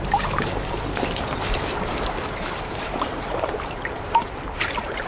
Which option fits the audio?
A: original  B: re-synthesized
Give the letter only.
B